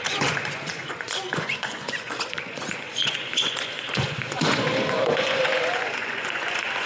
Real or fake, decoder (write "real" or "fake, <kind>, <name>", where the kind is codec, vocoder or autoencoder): fake, vocoder, Vocos